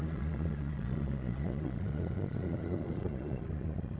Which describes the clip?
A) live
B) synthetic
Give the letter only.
B